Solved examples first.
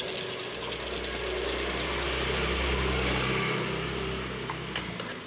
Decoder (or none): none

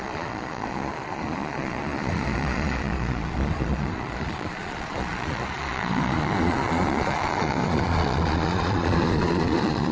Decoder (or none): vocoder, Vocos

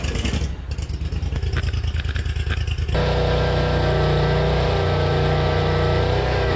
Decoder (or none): none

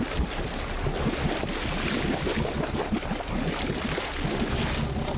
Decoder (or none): none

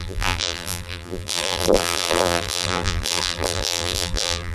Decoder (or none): vocoder, BigVGAN v2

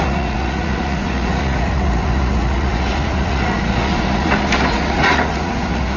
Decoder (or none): vocoder, Vocos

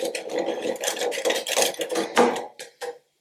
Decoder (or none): vocoder, BigVGAN v2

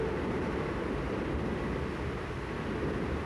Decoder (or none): none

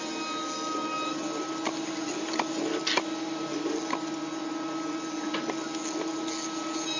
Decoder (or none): none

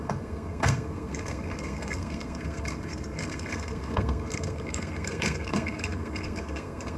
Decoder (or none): codec, SNAC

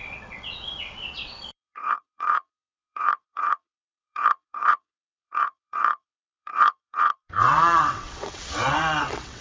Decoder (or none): vocoder, WaveNeXt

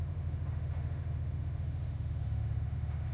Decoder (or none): autoencoder, DAC-VAE